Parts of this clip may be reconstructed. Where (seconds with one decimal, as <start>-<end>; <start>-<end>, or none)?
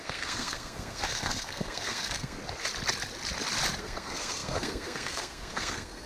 0.0-2.4; 3.8-6.1